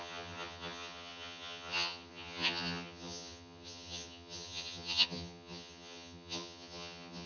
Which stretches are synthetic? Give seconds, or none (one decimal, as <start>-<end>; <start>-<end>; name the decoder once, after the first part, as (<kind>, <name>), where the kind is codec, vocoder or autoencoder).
0.0-7.3 (vocoder, HiFi-GAN)